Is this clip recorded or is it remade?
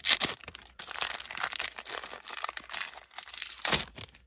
recorded